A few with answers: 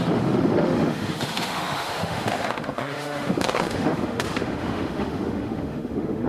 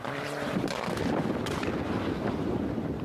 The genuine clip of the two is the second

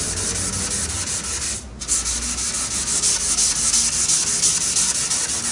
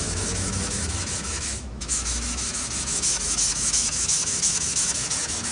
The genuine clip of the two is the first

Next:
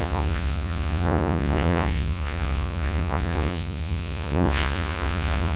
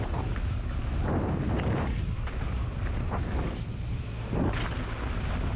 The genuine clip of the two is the second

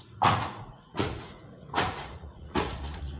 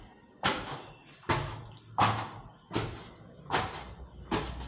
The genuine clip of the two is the second